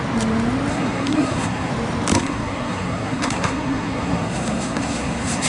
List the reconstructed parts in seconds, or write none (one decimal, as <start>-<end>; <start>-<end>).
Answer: 0.7-1.7; 2.1-5.5